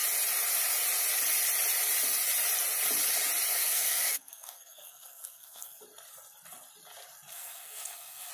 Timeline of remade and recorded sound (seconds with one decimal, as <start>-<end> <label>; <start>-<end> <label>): 0.0-3.5 recorded; 3.5-5.8 remade; 5.8-7.3 recorded; 7.3-8.3 remade